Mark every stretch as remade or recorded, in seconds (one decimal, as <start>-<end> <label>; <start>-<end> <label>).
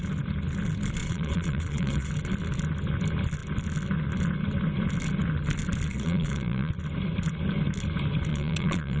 0.0-1.0 recorded; 1.0-2.1 remade; 2.1-5.9 recorded; 5.9-6.7 remade; 6.7-8.3 recorded; 8.3-9.0 remade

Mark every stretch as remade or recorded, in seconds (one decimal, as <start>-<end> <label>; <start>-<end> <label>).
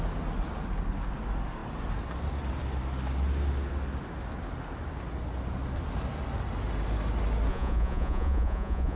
0.0-7.5 recorded; 7.5-9.0 remade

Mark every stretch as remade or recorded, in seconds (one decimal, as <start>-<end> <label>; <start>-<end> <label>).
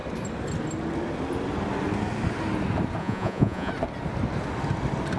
0.0-3.0 recorded; 3.0-3.7 remade; 3.7-5.2 recorded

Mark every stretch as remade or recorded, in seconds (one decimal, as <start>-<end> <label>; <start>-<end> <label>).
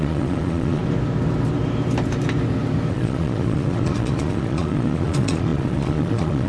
0.0-0.8 remade; 0.8-2.9 recorded; 2.9-6.5 remade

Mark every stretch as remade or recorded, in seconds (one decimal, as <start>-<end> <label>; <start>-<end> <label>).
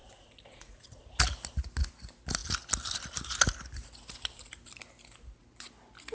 0.0-1.0 remade; 1.0-6.1 recorded